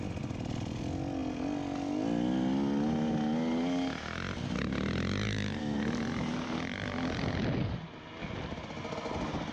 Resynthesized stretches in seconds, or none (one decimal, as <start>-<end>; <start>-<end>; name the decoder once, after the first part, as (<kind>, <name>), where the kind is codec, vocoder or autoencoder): none